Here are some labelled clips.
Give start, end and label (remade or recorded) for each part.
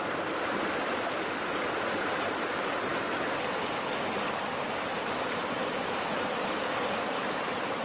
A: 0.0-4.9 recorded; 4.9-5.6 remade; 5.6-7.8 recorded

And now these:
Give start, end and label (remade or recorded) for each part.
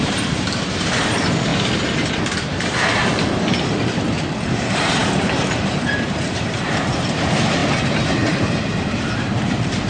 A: 0.0-1.5 remade; 1.5-2.1 recorded; 2.1-3.0 remade; 3.0-4.5 recorded; 4.5-7.6 remade; 7.6-8.1 recorded; 8.1-9.9 remade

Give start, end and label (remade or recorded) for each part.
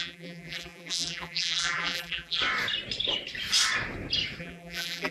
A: 0.0-2.4 remade; 2.4-4.4 recorded; 4.4-5.1 remade